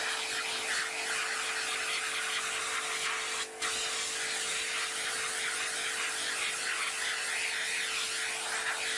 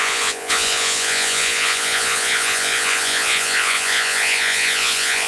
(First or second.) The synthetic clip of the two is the second